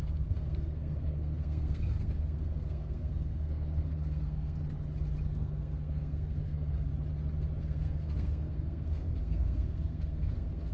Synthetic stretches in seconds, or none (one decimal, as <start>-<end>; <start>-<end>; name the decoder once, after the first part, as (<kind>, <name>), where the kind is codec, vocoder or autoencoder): 0.0-4.6 (codec, SNAC); 5.2-6.9; 7.6-10.7